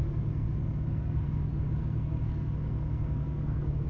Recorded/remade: remade